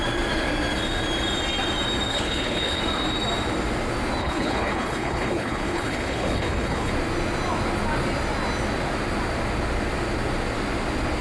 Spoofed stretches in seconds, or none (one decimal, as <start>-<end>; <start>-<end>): 2.1-2.8; 4.2-6.9